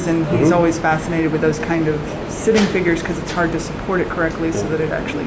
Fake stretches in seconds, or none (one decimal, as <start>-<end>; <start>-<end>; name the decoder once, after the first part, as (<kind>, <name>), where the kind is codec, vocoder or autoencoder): 1.4-2.0 (autoencoder, DAC-VAE)